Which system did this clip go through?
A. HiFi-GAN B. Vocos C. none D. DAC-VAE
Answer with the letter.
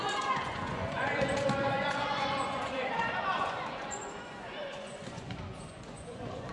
B